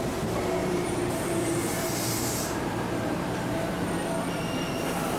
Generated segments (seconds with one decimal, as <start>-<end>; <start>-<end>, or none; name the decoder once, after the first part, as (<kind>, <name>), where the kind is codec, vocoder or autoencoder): 0.6-3.7 (vocoder, BigVGAN v2)